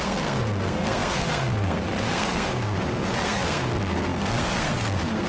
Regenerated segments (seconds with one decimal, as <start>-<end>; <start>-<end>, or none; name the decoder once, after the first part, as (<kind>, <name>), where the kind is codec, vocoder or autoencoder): 0.0-5.3 (codec, SNAC)